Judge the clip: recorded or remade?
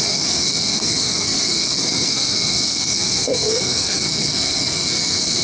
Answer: remade